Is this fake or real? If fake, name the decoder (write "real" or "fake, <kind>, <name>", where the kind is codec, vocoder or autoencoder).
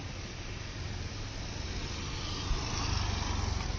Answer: real